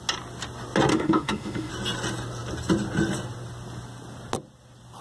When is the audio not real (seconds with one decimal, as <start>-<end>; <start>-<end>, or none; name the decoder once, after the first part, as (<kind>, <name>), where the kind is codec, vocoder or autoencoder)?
0.9-1.7 (autoencoder, DAC-VAE)